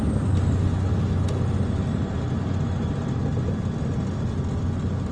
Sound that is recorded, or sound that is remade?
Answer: recorded